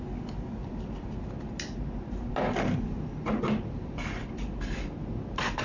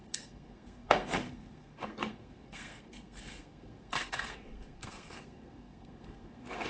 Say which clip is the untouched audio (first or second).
first